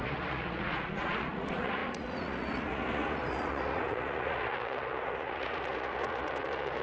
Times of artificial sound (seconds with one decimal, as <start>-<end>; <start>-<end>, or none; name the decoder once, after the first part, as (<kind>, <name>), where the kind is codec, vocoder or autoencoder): 0.0-6.8 (vocoder, Vocos)

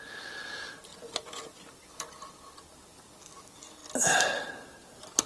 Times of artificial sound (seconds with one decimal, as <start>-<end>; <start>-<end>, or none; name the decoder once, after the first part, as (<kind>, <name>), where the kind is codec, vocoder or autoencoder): none

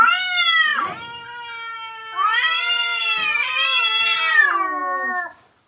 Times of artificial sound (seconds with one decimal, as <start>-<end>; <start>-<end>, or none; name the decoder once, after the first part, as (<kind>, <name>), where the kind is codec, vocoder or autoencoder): none

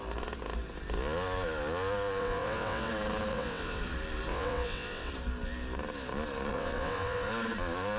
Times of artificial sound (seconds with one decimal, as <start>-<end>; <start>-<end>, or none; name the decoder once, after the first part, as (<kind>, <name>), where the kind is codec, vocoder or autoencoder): 2.2-2.9 (vocoder, WaveNeXt); 3.3-3.8; 4.3-5.1; 6.5-7.3

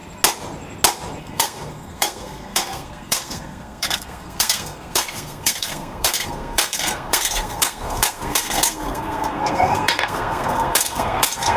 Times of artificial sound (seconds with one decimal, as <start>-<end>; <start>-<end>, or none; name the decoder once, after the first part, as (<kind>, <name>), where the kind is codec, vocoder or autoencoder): 1.2-11.6 (codec, SNAC)

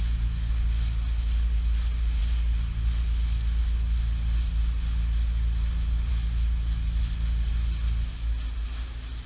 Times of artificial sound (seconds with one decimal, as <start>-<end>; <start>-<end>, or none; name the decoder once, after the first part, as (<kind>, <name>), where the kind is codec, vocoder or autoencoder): none

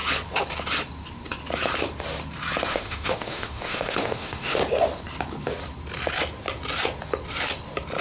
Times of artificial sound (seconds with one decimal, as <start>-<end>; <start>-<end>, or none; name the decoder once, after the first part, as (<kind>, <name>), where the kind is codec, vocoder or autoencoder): 2.7-4.6 (autoencoder, DAC-VAE)